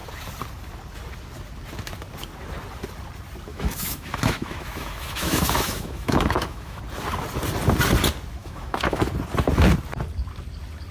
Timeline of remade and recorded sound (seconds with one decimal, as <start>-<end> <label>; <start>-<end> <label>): 0.0-3.5 recorded; 3.5-6.8 remade; 6.8-8.4 recorded; 8.4-9.0 remade; 9.0-10.9 recorded